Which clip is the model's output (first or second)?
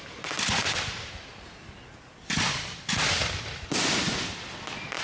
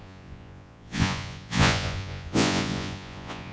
second